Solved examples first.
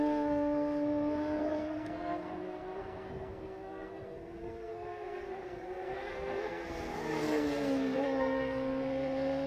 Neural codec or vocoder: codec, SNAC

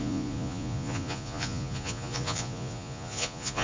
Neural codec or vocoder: vocoder, Vocos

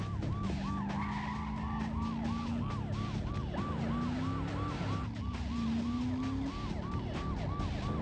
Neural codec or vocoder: none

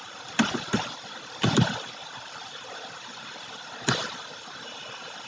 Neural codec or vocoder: none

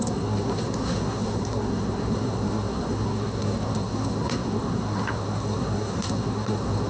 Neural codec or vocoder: codec, SNAC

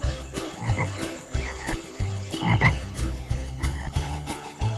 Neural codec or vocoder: codec, HILCodec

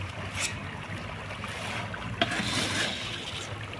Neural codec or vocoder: none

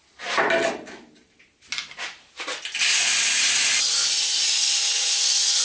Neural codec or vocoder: none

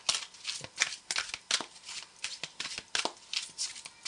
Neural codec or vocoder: none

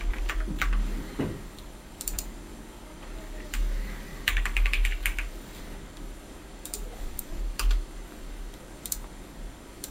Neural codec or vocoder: codec, DAC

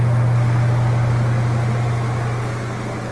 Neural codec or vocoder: none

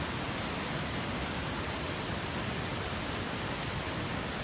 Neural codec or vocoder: none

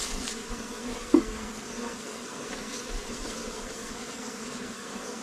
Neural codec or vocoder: codec, SNAC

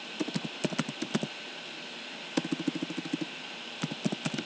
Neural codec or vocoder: none